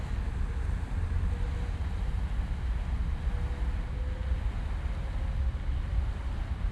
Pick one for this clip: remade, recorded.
recorded